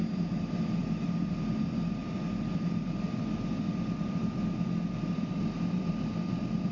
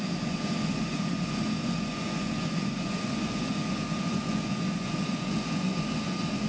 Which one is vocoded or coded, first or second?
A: second